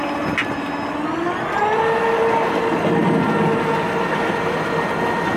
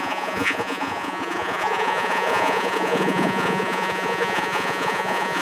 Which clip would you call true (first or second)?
first